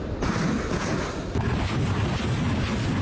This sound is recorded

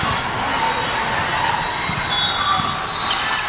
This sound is recorded